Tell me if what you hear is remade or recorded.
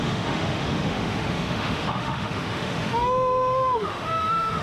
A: remade